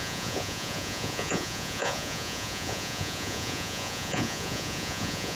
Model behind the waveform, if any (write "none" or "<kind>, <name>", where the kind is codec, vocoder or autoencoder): vocoder, Vocos